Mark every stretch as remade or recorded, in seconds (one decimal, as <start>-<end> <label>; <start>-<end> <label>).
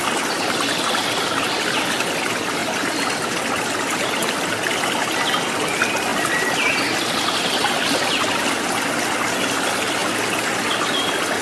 0.0-11.4 recorded